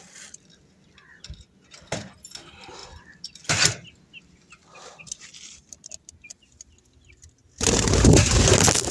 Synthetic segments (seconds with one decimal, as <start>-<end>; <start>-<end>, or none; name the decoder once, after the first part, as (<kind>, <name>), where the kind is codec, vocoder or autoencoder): none